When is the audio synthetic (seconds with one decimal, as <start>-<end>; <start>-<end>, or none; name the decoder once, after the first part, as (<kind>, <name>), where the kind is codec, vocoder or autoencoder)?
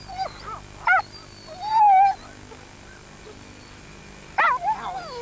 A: none